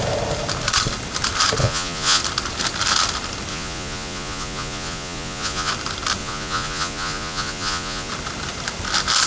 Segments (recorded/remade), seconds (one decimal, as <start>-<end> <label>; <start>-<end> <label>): 0.0-1.6 recorded; 1.6-2.2 remade; 2.2-3.5 recorded; 3.5-5.7 remade; 5.7-6.2 recorded; 6.2-8.1 remade; 8.1-9.3 recorded